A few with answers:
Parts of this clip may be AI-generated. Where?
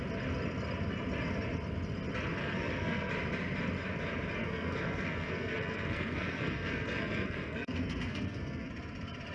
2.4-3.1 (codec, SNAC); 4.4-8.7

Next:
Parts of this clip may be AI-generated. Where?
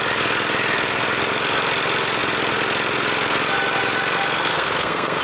4.5-5.2 (codec, SNAC)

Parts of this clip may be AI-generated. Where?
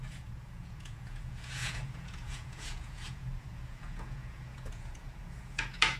0.0-6.0 (vocoder, Vocos)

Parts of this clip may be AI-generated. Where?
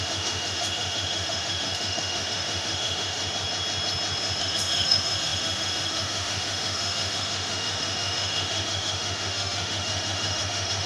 0.0-3.2 (autoencoder, DAC-VAE); 4.4-10.9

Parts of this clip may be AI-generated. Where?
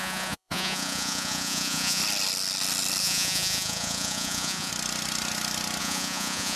0.0-2.0 (vocoder, Vocos); 3.0-4.7; 5.8-6.6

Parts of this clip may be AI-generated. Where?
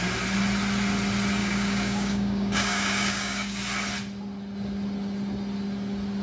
1.4-3.6 (codec, DAC)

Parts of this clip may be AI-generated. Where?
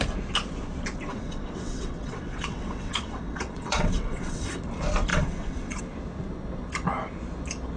1.1-4.6 (vocoder, WaveNeXt); 5.1-5.8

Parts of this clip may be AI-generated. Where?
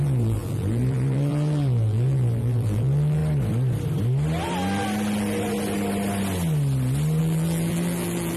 0.0-3.2 (vocoder, BigVGAN v2); 7.2-8.4